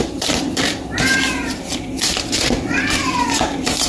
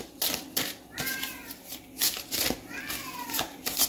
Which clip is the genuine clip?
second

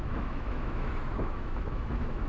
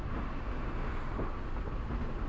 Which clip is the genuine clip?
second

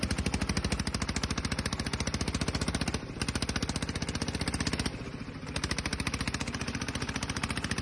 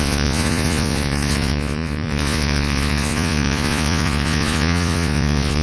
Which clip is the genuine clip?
first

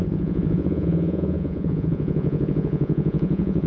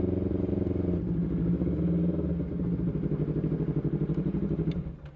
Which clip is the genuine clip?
second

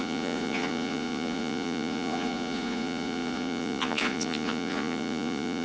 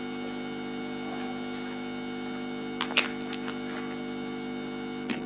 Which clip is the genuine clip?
second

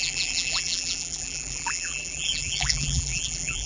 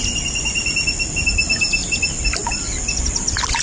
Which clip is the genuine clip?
second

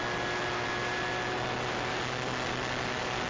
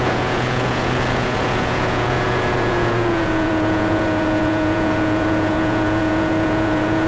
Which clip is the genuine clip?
first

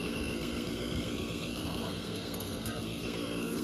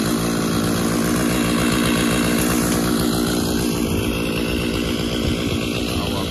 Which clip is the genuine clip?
second